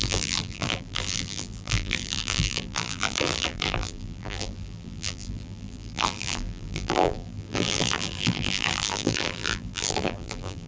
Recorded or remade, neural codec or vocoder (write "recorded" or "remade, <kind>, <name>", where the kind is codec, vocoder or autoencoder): remade, vocoder, BigVGAN v2